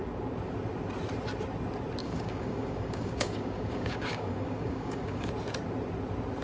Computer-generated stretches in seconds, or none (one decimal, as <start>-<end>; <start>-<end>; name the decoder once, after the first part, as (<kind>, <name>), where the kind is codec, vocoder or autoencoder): 2.0-5.3 (codec, DAC)